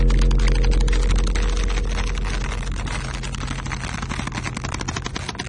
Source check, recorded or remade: recorded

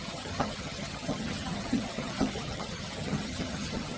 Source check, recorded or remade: remade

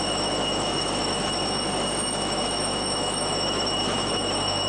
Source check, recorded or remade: remade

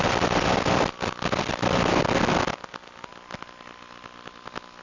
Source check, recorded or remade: recorded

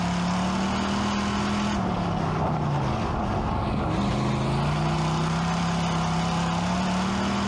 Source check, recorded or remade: recorded